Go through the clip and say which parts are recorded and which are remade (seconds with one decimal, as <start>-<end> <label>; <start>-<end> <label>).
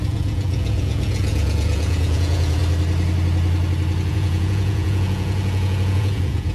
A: 0.0-2.6 remade; 2.6-4.1 recorded; 4.1-6.5 remade